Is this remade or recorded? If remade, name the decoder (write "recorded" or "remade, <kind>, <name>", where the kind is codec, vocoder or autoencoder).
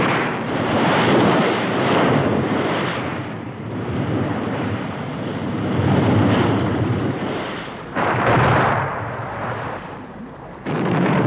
remade, vocoder, BigVGAN v2